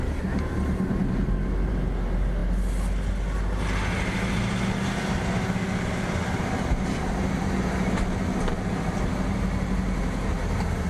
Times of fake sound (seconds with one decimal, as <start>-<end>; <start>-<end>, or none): none